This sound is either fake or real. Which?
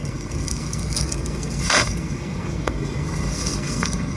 fake